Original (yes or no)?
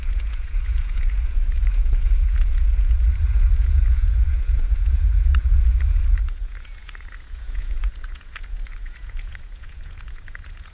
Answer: no